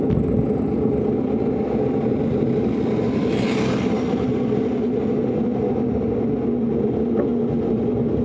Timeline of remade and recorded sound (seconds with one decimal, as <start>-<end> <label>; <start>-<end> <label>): 0.0-8.2 recorded